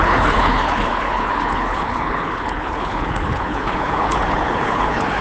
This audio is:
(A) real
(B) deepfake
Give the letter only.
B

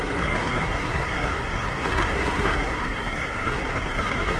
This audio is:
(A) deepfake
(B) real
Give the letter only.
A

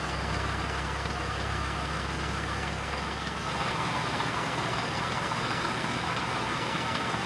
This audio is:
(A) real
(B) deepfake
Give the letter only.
B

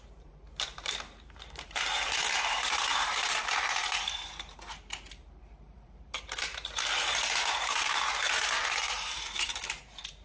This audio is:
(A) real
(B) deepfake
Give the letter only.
B